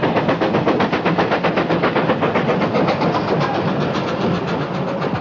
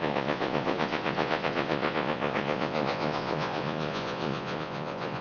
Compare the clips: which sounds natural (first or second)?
first